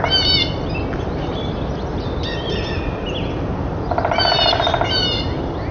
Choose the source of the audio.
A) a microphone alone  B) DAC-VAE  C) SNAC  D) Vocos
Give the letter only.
A